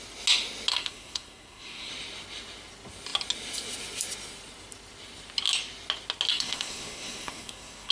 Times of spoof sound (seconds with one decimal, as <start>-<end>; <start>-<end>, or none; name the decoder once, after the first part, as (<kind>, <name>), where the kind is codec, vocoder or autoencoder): 0.7-1.9 (codec, SNAC); 6.3-7.9